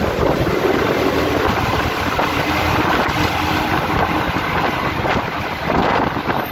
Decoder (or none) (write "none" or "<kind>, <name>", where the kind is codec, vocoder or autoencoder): none